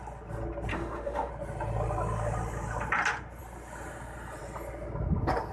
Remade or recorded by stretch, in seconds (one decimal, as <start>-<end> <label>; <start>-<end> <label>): 0.0-0.7 recorded; 0.7-1.3 remade; 1.3-5.5 recorded